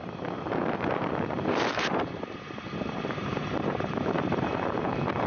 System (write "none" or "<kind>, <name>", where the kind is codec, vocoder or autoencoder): vocoder, BigVGAN v2